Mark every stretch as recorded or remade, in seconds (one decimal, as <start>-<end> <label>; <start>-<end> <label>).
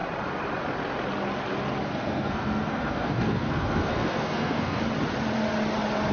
0.0-1.9 recorded; 1.9-4.8 remade; 4.8-6.1 recorded